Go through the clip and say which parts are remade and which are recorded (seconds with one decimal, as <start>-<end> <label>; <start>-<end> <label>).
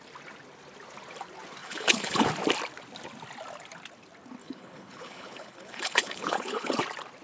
0.0-1.6 recorded; 1.6-2.3 remade; 2.3-4.4 recorded; 4.4-6.8 remade; 6.8-7.2 recorded